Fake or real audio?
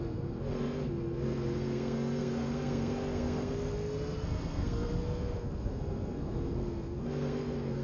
fake